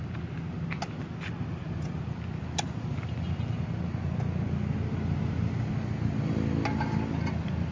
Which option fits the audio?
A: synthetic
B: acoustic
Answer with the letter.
B